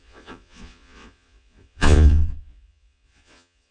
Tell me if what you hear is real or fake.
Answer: fake